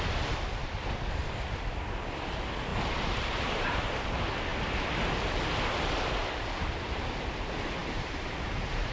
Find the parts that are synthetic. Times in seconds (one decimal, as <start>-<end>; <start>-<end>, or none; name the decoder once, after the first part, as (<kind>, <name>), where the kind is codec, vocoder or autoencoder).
2.7-4.1 (vocoder, BigVGAN v2); 7.8-8.9